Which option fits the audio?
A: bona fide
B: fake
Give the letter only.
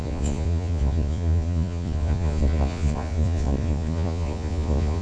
B